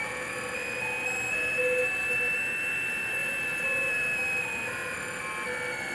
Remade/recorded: recorded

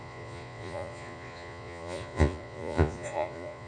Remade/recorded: remade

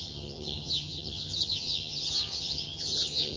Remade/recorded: remade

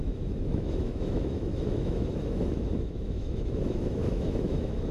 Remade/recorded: remade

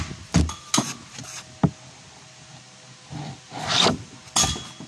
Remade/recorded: recorded